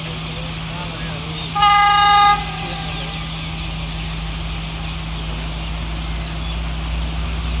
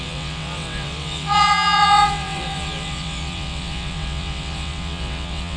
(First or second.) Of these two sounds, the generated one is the second